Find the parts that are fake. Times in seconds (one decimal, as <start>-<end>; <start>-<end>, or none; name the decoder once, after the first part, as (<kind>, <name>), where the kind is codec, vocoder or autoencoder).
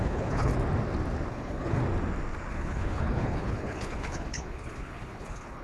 0.0-0.5 (codec, HILCodec); 1.3-1.8; 2.5-5.6